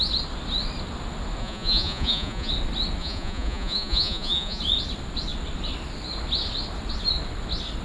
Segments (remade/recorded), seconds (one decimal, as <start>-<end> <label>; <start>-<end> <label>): 0.0-1.4 recorded; 1.4-2.5 remade; 2.5-3.0 recorded; 3.0-4.6 remade; 4.6-7.8 recorded